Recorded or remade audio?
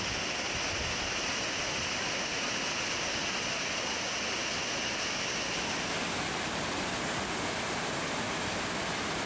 recorded